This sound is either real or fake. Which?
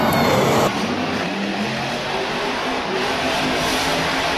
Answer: fake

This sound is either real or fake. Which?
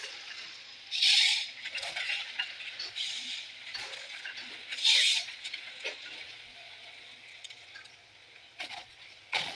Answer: fake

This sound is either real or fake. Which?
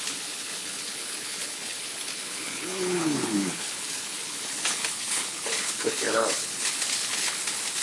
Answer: fake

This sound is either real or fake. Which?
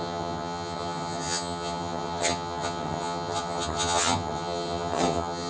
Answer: fake